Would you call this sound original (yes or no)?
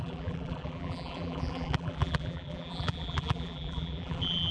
no